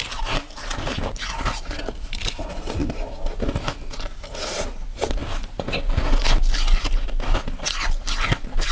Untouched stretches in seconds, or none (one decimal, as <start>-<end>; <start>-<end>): 0.0-8.7